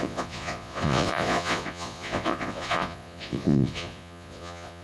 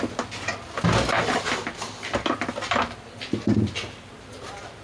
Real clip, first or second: second